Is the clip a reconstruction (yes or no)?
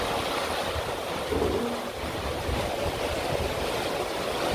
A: no